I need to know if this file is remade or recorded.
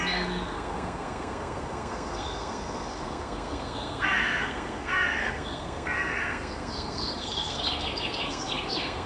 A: remade